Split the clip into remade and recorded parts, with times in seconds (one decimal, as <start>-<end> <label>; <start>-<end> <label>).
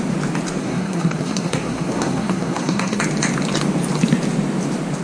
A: 0.0-0.6 recorded; 0.6-3.0 remade; 3.0-5.0 recorded